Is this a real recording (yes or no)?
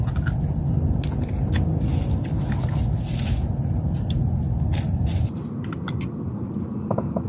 yes